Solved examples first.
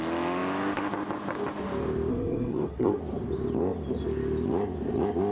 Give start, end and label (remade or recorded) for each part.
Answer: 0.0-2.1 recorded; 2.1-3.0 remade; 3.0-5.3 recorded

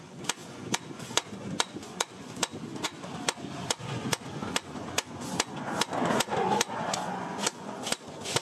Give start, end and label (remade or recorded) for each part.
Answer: 0.0-2.5 remade; 2.5-3.5 recorded; 3.5-8.4 remade

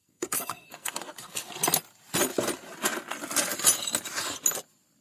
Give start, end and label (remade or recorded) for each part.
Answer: 0.0-1.5 remade; 1.5-5.0 recorded

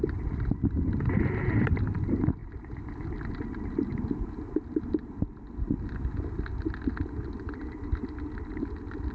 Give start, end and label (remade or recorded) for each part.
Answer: 0.0-9.1 recorded

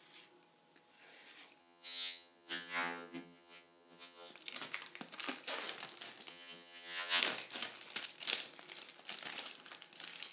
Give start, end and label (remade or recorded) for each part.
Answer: 0.0-1.6 recorded; 1.6-4.3 remade; 4.3-6.3 recorded; 6.3-7.2 remade; 7.2-10.3 recorded